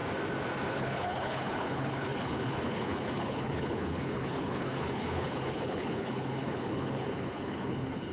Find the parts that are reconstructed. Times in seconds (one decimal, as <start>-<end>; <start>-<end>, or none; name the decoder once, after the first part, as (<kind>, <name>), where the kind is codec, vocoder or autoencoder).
0.7-8.1 (codec, HILCodec)